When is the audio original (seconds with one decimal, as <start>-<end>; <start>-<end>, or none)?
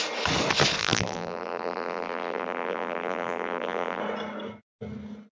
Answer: 0.0-0.8; 4.0-5.4